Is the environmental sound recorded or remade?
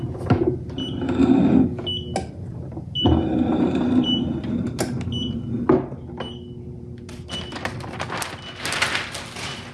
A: recorded